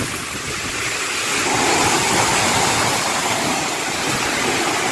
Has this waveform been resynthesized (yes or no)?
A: no